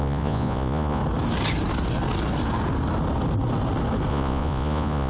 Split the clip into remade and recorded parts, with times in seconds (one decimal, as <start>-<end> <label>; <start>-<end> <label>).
0.0-1.0 remade; 1.0-4.1 recorded; 4.1-5.1 remade

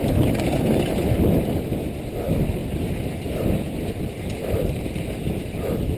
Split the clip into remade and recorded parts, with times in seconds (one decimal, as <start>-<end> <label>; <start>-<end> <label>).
0.0-6.0 recorded